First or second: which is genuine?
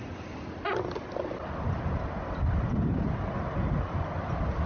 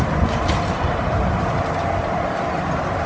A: first